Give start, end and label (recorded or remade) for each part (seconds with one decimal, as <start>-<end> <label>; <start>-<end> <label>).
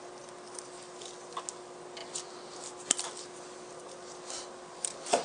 0.0-5.2 recorded